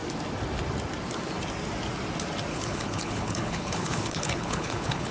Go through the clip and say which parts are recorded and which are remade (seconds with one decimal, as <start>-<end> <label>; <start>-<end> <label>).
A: 0.0-2.5 recorded; 2.5-5.1 remade